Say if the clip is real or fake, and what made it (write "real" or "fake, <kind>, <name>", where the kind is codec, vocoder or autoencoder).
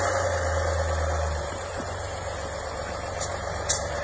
real